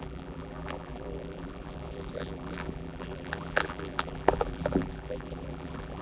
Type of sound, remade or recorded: remade